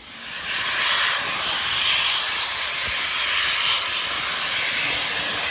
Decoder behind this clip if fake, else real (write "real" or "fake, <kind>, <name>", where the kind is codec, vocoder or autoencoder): real